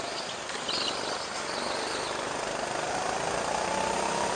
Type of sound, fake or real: real